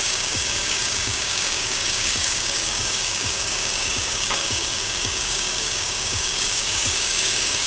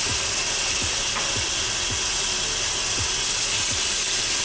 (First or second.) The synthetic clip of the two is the first